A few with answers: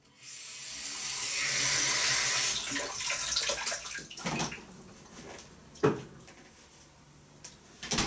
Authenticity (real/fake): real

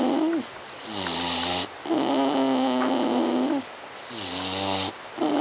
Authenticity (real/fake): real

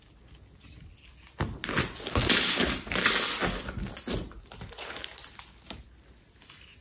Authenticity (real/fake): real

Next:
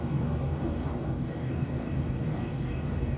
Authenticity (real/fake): fake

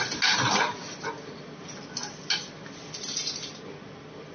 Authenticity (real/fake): real